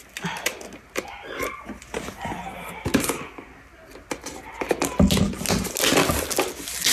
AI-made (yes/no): no